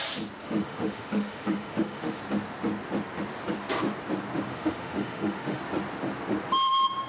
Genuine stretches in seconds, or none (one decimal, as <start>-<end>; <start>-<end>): 0.0-0.4; 2.2-4.5; 5.6-7.1